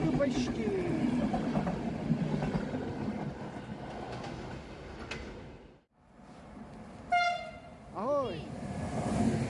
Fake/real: real